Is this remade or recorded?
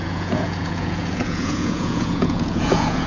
remade